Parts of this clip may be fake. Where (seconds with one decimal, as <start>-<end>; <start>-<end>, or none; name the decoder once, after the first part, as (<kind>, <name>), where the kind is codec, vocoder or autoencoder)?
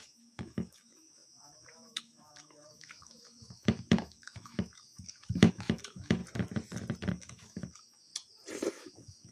0.0-6.2 (autoencoder, DAC-VAE); 7.1-8.1; 8.7-9.3